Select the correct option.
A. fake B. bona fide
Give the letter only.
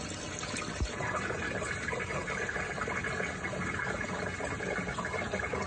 B